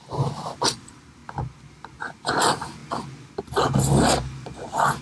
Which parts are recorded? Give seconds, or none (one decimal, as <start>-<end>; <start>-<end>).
1.2-2.0; 2.8-3.4